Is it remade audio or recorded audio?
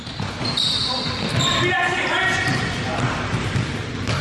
recorded